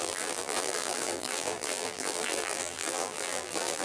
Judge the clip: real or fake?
fake